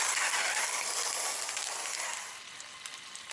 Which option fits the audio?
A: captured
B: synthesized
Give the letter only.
A